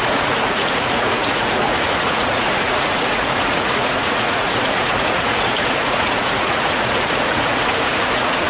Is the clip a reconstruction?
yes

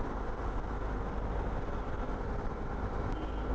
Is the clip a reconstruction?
no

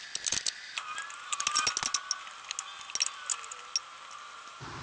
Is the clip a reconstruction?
no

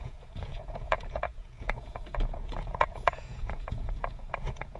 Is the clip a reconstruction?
yes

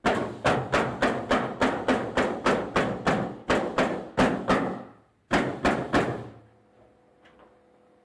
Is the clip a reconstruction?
no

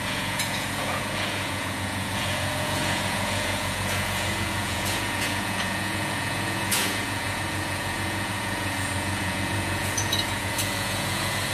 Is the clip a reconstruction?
yes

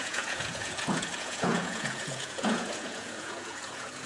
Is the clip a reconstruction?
yes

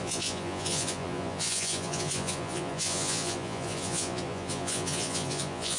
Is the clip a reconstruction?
yes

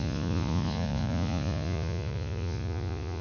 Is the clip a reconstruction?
yes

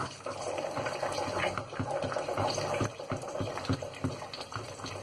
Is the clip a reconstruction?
no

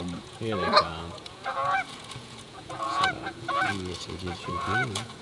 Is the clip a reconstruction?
yes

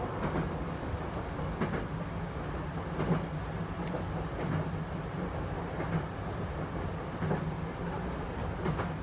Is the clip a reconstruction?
no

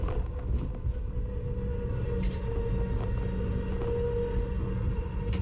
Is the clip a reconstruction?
no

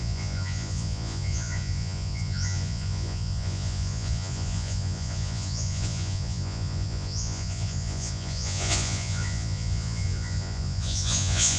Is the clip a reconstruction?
yes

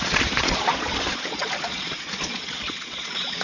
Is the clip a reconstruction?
yes